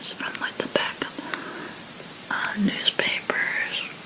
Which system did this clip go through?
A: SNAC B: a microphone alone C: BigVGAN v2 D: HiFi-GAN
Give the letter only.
B